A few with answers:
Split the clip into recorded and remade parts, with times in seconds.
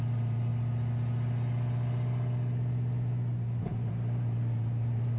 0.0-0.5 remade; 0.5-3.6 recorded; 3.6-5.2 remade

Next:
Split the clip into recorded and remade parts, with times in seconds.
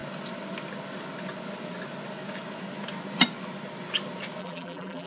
0.0-4.4 recorded; 4.4-5.1 remade